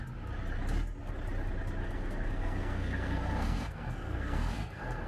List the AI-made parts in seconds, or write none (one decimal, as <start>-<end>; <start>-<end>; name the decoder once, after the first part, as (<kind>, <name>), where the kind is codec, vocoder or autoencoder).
1.8-5.1 (codec, SNAC)